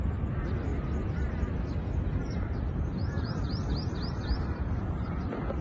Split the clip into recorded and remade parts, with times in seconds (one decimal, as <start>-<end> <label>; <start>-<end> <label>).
0.0-0.7 recorded; 0.7-1.3 remade; 1.3-2.2 recorded; 2.2-5.6 remade